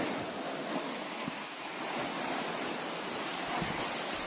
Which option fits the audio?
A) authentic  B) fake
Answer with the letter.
A